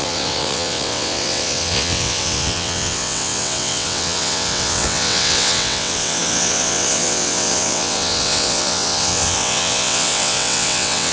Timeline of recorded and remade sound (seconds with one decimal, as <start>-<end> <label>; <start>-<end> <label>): 0.0-11.1 remade